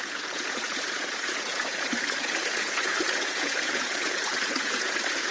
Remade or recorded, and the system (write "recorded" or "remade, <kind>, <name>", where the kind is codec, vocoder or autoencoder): remade, vocoder, Vocos